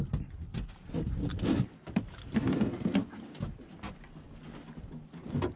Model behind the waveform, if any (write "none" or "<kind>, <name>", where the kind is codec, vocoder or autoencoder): none